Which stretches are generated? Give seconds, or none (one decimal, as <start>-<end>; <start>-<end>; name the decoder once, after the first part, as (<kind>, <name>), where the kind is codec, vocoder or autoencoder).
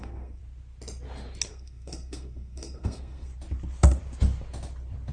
0.0-0.4 (codec, SNAC); 1.5-3.3